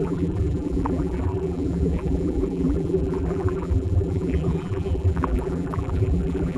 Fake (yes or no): yes